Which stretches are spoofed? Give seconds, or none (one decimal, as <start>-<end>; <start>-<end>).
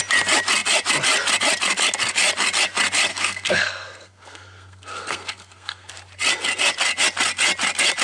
3.1-5.9